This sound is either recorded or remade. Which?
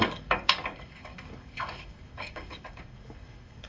remade